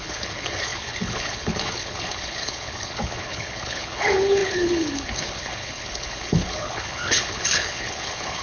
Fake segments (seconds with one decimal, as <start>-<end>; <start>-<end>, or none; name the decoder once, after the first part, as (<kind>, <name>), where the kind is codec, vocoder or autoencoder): 0.0-8.4 (codec, HILCodec)